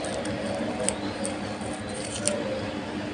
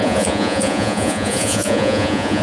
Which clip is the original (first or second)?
first